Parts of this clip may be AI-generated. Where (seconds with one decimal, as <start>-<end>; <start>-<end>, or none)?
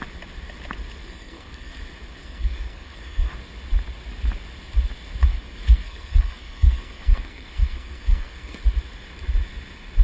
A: 1.0-1.8; 2.2-3.3; 5.3-8.6